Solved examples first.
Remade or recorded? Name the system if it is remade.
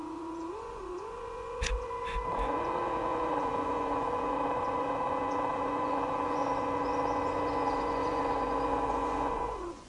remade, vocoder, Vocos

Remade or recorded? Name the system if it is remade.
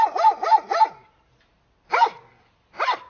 recorded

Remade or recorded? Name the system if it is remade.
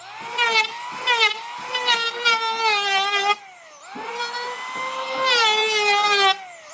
recorded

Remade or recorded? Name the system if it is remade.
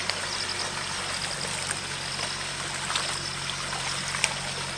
recorded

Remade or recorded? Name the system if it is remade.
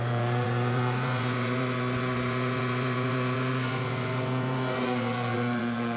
remade, vocoder, Vocos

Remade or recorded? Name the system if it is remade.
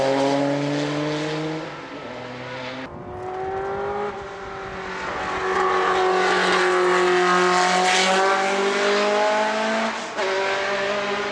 recorded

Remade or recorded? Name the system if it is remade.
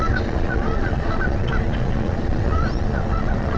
remade, vocoder, Vocos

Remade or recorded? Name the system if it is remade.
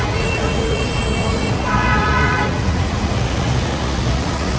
remade, vocoder, Vocos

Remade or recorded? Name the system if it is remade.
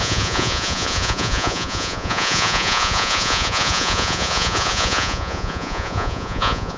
remade, vocoder, Vocos